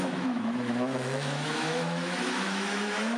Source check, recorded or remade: remade